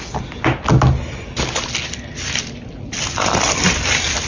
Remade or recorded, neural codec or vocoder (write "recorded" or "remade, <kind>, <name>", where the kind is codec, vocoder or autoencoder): recorded